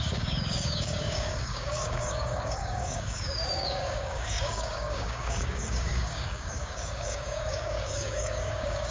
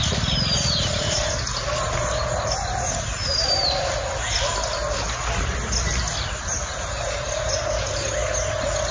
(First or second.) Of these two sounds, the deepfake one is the first